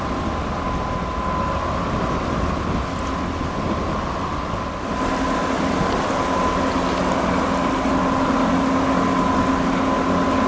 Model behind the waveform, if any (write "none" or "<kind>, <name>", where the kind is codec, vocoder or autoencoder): none